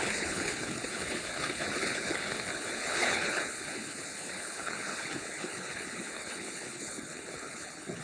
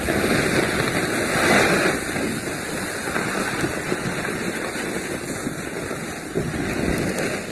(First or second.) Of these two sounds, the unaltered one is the second